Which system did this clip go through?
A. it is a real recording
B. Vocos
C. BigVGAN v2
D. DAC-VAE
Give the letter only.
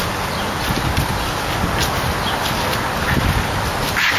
A